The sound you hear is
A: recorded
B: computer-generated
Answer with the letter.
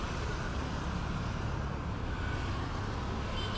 A